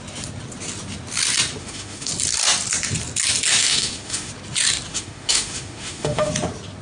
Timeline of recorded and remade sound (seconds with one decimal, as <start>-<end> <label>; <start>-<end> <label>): 0.0-1.6 recorded; 1.6-2.1 remade; 2.1-3.6 recorded; 3.6-4.3 remade; 4.3-4.9 recorded; 4.9-6.3 remade; 6.3-6.8 recorded